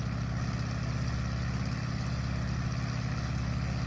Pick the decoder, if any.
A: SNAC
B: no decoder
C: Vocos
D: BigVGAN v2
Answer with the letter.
B